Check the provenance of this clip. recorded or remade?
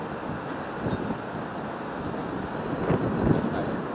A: recorded